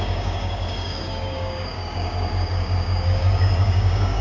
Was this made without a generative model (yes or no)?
no